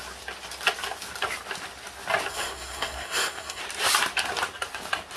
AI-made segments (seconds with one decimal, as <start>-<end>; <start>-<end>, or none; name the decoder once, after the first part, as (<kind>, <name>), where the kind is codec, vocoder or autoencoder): 2.3-3.6 (codec, SNAC)